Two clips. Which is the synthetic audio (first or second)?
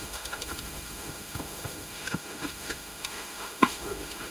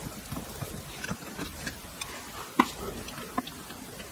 first